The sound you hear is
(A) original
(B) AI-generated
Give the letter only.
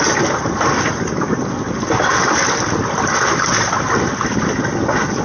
A